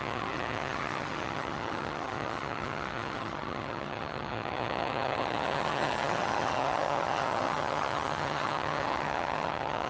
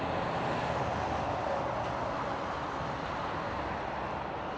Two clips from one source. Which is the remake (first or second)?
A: first